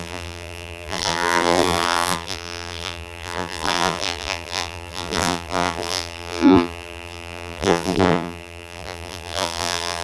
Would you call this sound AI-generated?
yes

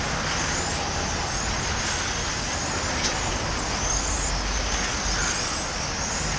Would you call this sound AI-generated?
no